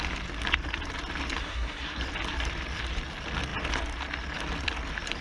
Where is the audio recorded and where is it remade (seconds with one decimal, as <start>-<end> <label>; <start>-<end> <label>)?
0.0-1.4 recorded; 1.4-2.0 remade; 2.0-5.2 recorded